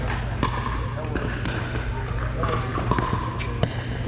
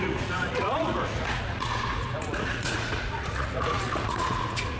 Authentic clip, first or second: first